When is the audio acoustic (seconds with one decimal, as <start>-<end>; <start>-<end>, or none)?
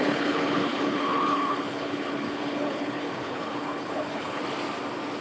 4.4-5.2